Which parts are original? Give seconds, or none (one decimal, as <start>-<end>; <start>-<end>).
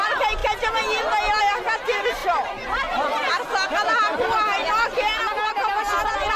0.0-6.4